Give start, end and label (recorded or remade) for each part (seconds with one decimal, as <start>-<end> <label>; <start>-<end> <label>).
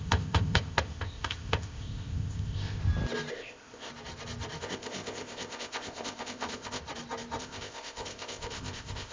0.0-2.8 remade; 2.8-3.3 recorded; 3.3-3.9 remade; 3.9-4.6 recorded; 4.6-6.8 remade; 6.8-7.4 recorded; 7.4-9.1 remade